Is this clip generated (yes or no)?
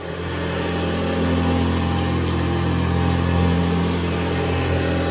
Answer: no